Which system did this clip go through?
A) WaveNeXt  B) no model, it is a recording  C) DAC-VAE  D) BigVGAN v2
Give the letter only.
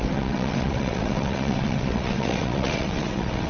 A